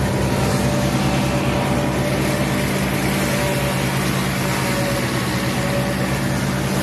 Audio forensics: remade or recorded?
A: recorded